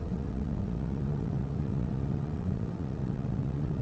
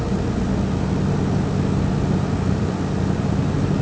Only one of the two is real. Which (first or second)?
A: second